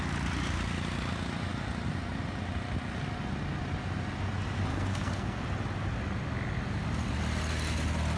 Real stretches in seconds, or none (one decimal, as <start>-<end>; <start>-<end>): 0.0-4.7; 5.4-8.2